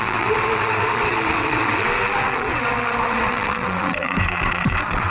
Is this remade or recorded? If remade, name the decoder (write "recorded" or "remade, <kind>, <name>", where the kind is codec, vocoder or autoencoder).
remade, vocoder, WaveNeXt